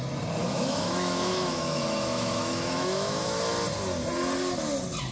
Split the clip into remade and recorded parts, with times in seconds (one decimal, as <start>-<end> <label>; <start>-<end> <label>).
0.0-0.4 recorded; 0.4-3.5 remade; 3.5-5.1 recorded